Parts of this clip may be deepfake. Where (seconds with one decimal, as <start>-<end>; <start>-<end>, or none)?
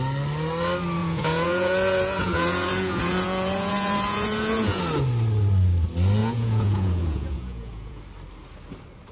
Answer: 1.0-4.8; 6.2-8.0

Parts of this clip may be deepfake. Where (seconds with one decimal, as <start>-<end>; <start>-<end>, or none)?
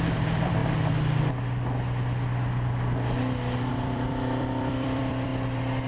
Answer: 0.0-0.6; 3.7-5.3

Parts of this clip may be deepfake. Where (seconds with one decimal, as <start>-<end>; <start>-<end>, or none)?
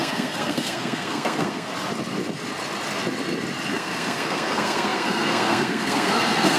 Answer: 0.0-1.7; 3.7-6.6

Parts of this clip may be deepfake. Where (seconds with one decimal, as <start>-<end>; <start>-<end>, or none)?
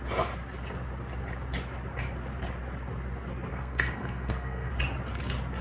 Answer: 3.5-4.7